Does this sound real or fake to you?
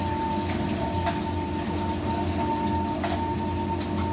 real